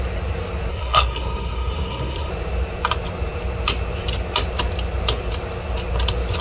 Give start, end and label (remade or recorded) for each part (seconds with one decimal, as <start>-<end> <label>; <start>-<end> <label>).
0.0-0.7 recorded; 0.7-2.3 remade; 2.3-6.4 recorded